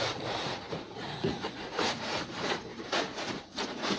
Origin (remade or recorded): remade